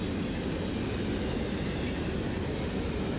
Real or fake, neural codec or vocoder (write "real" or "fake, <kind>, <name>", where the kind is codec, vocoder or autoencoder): real